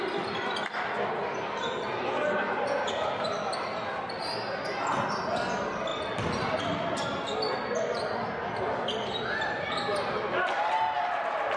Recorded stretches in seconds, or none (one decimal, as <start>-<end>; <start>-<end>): 0.0-11.6

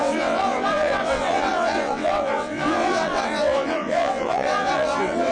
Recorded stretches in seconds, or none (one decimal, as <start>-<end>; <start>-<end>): none